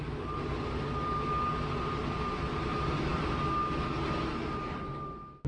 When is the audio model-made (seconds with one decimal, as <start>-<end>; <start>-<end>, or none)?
none